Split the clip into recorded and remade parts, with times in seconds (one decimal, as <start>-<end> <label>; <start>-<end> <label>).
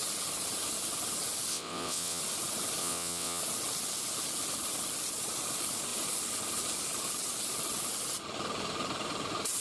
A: 0.0-1.5 recorded; 1.5-2.2 remade; 2.2-2.8 recorded; 2.8-3.4 remade; 3.4-9.6 recorded